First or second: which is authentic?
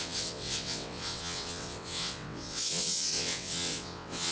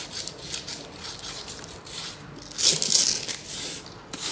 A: second